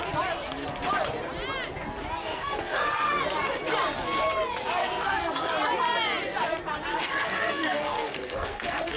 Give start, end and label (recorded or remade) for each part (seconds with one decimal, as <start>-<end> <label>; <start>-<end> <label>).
0.0-2.2 recorded; 2.2-3.2 remade; 3.2-4.8 recorded; 4.8-5.5 remade; 5.5-6.9 recorded; 6.9-9.0 remade